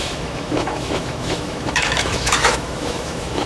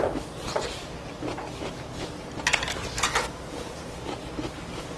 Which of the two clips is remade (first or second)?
first